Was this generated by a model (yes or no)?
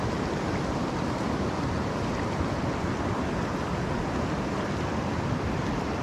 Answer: no